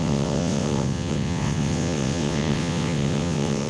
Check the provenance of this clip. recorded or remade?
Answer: remade